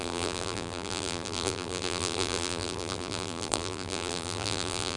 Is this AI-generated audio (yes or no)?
yes